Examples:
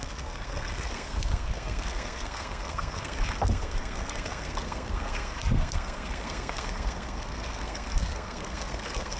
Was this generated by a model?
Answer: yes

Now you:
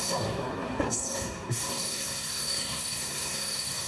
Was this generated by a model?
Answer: yes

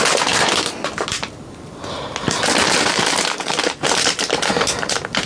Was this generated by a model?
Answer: no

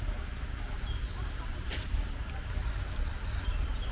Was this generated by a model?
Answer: no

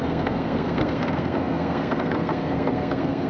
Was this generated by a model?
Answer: yes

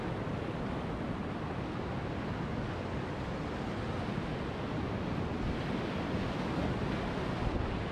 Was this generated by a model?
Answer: no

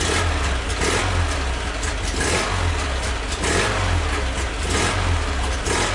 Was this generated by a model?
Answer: no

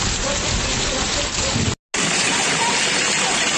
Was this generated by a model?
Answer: no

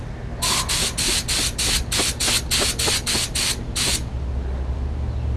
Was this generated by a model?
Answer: no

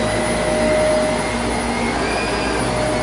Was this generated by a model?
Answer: no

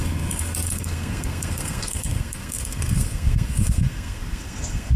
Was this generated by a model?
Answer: yes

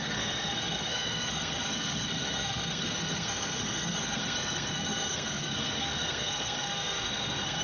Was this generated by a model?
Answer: yes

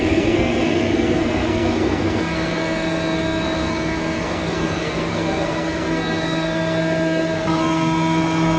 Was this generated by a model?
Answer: yes